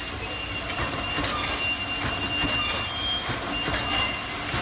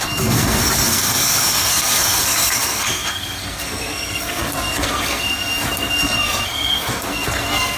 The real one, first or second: first